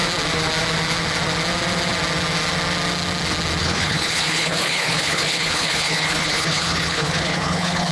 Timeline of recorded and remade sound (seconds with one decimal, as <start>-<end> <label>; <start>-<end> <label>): 0.0-3.6 recorded; 3.6-7.9 remade